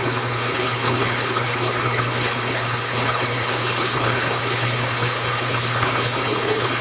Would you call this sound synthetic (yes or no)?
yes